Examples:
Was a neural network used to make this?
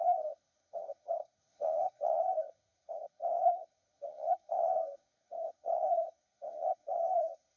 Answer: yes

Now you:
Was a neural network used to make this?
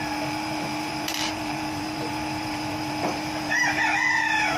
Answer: yes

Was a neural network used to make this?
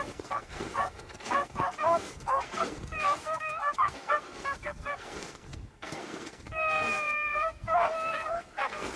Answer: yes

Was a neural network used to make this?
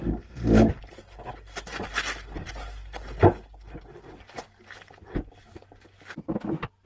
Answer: no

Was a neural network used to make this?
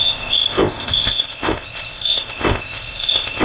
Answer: yes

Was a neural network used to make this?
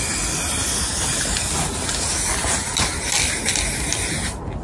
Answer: no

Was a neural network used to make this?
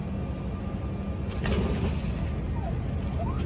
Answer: no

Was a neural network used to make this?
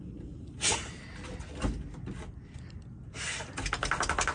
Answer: no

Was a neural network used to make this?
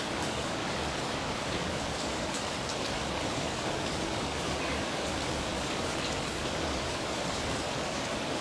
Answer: yes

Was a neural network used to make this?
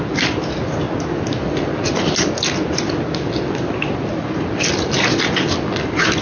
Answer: no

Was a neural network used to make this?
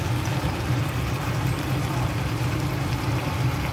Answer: yes